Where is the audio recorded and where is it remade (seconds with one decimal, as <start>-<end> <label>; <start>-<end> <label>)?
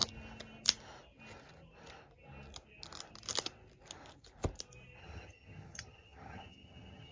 0.0-5.0 recorded; 5.0-7.1 remade